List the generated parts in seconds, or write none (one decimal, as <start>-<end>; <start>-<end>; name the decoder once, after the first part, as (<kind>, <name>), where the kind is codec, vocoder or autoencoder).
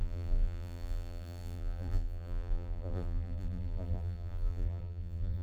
0.0-5.4 (vocoder, BigVGAN v2)